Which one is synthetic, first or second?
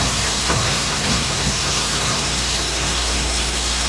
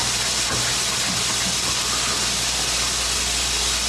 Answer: first